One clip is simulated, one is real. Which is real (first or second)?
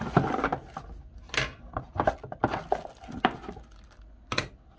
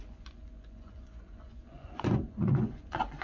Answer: first